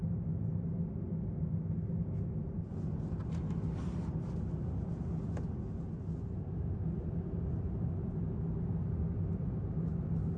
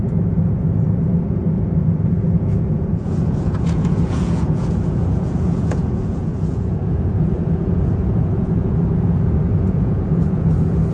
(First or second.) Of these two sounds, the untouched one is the first